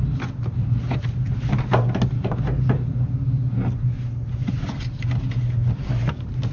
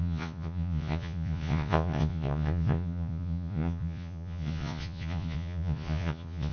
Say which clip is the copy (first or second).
second